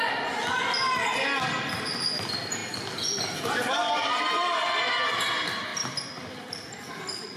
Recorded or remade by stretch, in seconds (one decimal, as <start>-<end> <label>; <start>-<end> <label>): 0.0-3.8 recorded; 3.8-4.6 remade; 4.6-5.7 recorded; 5.7-6.9 remade; 6.9-7.4 recorded